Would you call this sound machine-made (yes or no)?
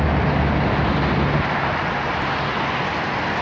no